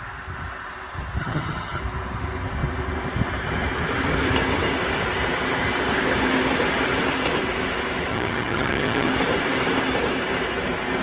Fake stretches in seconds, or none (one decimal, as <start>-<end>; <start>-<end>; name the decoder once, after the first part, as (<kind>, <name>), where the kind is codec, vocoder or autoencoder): 1.2-1.8 (vocoder, HiFi-GAN); 8.1-9.1